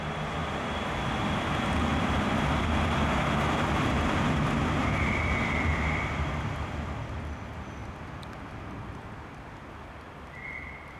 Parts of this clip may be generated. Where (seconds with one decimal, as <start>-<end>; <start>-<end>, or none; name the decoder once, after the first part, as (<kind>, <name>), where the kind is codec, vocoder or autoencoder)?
0.4-1.5 (vocoder, BigVGAN v2); 1.9-5.7